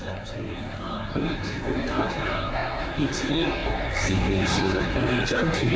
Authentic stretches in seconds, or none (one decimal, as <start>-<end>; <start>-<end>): none